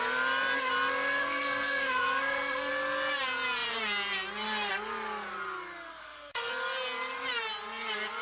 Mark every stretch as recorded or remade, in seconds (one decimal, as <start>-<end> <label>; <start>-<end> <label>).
0.0-1.2 recorded; 1.2-2.7 remade; 2.7-5.9 recorded; 5.9-6.5 remade; 6.5-8.2 recorded